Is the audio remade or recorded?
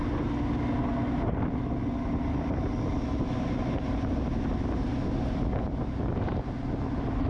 recorded